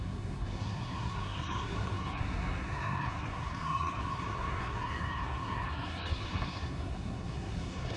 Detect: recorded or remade remade